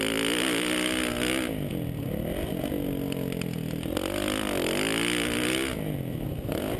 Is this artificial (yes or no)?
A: no